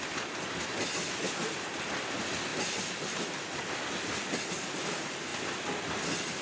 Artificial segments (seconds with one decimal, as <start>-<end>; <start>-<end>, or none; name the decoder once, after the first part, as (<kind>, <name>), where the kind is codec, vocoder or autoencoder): none